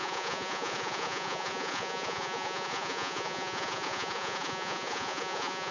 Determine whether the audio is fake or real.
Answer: fake